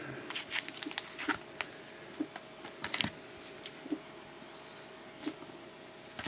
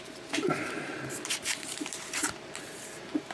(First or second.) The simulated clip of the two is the second